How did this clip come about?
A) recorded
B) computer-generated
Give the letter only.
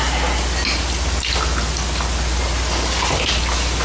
A